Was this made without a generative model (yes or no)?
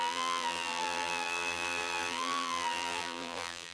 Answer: no